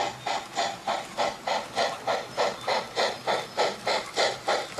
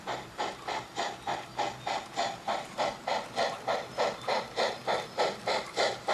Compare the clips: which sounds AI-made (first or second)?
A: second